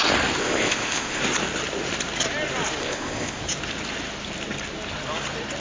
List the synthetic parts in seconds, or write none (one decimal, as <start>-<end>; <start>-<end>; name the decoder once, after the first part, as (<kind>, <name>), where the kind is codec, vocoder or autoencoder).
0.4-1.2 (codec, ZipCodec); 2.8-3.4